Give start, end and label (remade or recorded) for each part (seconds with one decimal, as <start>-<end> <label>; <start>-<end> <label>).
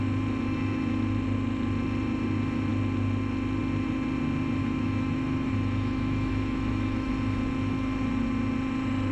0.0-4.6 recorded; 4.6-7.1 remade; 7.1-9.1 recorded